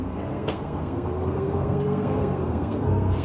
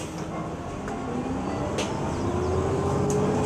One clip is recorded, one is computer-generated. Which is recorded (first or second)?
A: second